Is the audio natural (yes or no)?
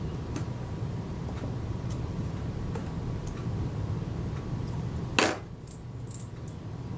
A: yes